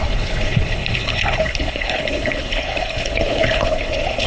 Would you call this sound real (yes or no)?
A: no